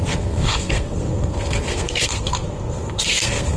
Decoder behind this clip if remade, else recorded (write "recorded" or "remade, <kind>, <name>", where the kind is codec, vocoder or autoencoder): remade, codec, SNAC